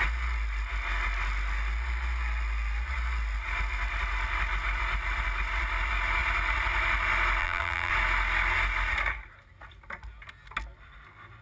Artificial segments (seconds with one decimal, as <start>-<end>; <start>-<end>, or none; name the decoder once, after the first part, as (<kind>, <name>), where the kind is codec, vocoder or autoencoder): 7.4-7.9 (vocoder, BigVGAN v2)